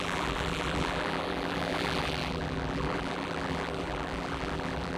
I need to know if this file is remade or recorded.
remade